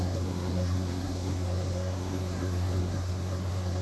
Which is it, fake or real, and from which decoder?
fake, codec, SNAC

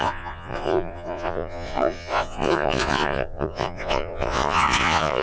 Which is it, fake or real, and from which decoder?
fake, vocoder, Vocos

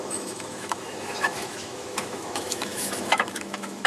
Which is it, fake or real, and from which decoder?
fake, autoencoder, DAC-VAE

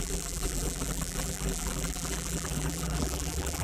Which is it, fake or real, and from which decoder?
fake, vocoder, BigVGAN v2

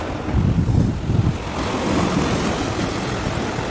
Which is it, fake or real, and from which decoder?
real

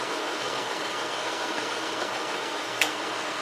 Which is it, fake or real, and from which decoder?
fake, codec, SNAC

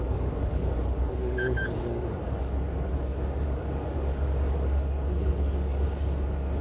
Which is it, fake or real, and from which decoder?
fake, codec, DAC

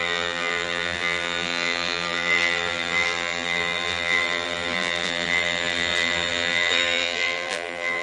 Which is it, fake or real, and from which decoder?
fake, vocoder, BigVGAN v2